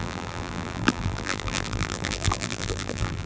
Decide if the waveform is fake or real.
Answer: fake